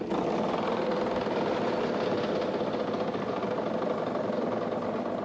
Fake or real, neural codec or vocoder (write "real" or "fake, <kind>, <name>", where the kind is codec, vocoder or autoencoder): real